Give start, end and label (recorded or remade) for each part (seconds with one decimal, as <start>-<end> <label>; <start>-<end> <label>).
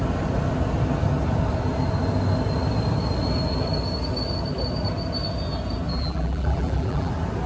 0.0-5.9 recorded; 5.9-7.1 remade; 7.1-7.5 recorded